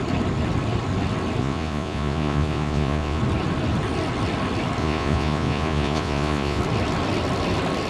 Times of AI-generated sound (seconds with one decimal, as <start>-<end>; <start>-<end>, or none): 1.4-3.2; 4.8-6.6